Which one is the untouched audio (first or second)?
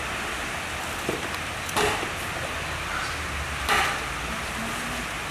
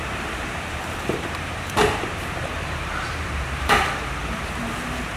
first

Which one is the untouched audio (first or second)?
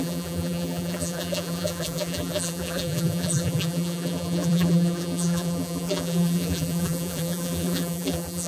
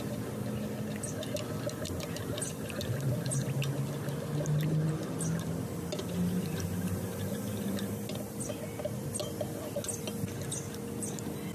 second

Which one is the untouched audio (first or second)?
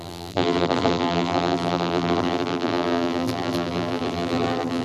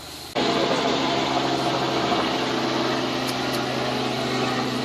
second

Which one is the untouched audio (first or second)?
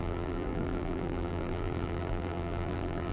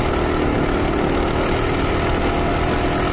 second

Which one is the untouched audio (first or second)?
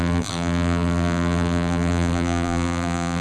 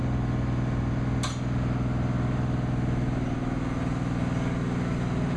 second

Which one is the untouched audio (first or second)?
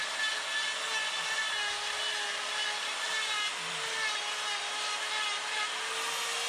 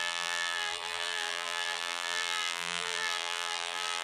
first